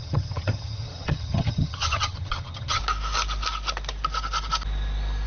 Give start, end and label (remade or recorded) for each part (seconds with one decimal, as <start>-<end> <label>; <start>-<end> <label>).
0.0-2.8 remade; 2.8-5.3 recorded